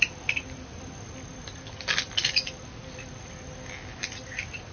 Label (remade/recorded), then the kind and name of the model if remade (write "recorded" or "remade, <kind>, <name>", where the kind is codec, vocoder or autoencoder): recorded